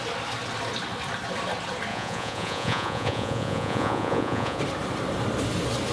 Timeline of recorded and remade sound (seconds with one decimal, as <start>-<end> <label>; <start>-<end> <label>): 0.0-1.9 recorded; 1.9-4.6 remade; 4.6-5.9 recorded